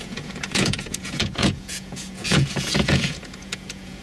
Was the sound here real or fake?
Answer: fake